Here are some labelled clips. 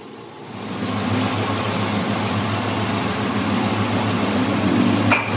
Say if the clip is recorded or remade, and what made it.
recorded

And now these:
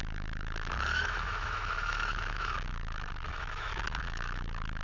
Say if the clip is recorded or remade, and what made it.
remade, autoencoder, DAC-VAE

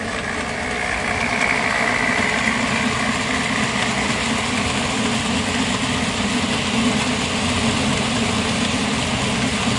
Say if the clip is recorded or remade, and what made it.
recorded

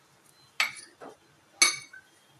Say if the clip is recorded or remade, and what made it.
recorded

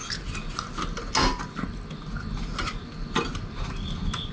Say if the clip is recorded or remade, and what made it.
recorded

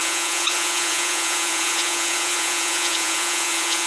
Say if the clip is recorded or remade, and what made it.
remade, vocoder, Vocos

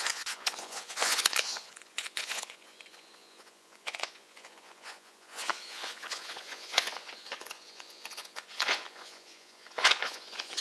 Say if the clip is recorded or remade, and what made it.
remade, vocoder, Vocos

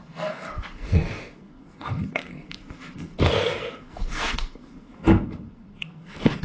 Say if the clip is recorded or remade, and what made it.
remade, codec, SNAC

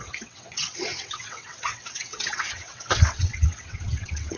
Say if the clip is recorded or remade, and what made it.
remade, vocoder, WaveNeXt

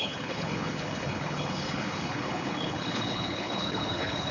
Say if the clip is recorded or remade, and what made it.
remade, codec, HILCodec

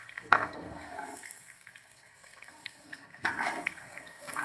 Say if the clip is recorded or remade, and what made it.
remade, codec, SNAC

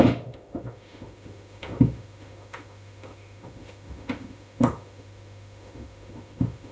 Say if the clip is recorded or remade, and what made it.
remade, autoencoder, DAC-VAE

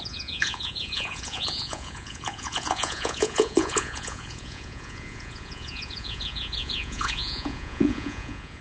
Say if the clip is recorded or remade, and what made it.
remade, vocoder, Vocos